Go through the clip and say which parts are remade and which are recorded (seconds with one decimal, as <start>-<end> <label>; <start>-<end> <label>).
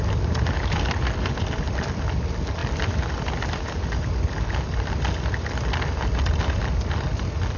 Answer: 0.0-7.6 recorded